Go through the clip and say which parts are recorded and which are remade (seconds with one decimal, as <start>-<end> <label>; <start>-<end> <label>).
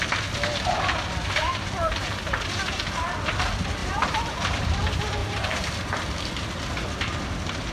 0.0-1.5 recorded; 1.5-2.2 remade; 2.2-3.8 recorded; 3.8-4.7 remade; 4.7-5.2 recorded; 5.2-5.8 remade; 5.8-7.7 recorded